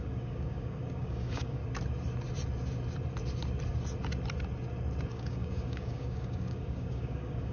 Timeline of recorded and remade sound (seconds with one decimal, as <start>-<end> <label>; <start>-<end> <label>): 0.0-1.6 remade; 1.6-5.0 recorded; 5.0-7.5 remade